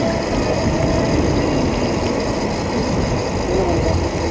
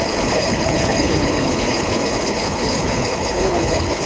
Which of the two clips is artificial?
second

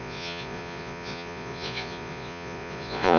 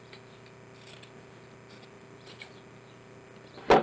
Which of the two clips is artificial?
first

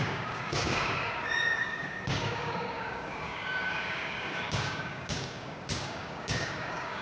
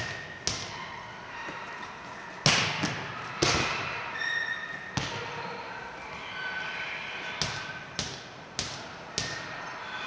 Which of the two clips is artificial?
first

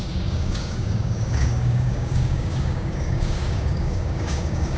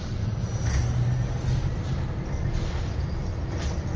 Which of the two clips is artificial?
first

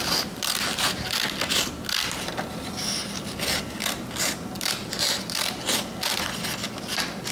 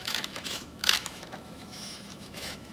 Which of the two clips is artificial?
second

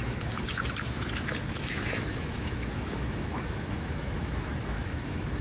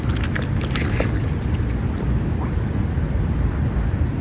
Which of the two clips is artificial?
first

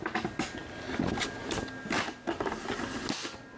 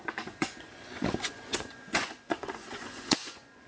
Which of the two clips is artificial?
second